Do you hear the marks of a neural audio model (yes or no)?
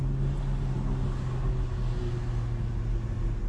no